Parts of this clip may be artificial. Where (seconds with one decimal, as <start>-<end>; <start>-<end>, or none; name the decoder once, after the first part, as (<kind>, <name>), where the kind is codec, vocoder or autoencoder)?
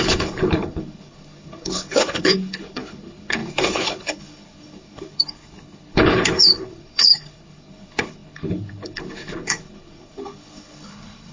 0.0-11.3 (codec, HILCodec)